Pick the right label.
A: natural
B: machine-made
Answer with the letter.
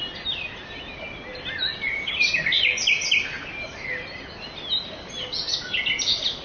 A